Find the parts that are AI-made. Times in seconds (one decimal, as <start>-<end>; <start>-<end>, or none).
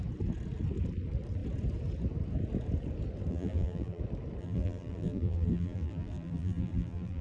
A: 3.3-4.0; 4.4-7.2